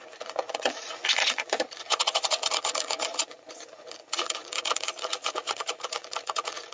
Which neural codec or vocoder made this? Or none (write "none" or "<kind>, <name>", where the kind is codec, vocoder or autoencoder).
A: vocoder, Vocos